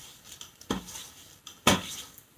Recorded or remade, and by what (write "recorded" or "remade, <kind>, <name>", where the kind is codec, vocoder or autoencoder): recorded